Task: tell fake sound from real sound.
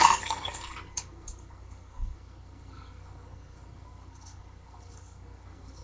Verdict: fake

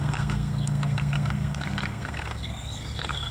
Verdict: fake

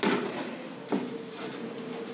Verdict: real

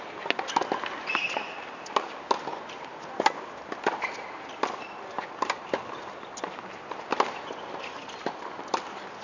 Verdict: real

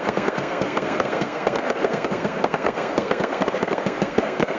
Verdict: fake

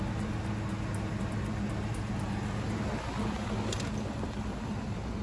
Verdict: real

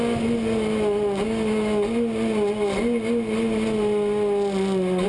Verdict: real